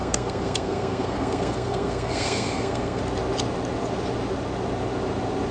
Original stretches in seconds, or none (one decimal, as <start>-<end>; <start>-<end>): 3.0-5.5